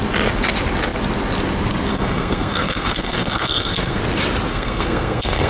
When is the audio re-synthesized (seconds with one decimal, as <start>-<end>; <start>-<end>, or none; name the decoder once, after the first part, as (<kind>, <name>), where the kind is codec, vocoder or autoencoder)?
1.9-4.0 (codec, SNAC); 4.5-5.5